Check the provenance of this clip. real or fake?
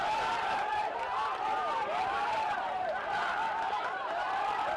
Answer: fake